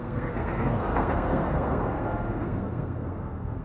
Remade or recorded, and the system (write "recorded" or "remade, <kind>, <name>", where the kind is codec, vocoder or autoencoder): remade, codec, SNAC